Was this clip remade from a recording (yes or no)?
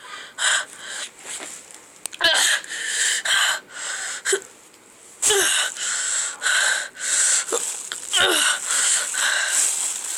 no